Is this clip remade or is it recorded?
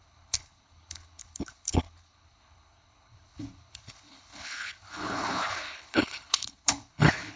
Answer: remade